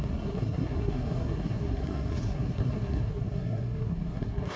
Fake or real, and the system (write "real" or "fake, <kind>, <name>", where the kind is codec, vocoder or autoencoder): fake, codec, SNAC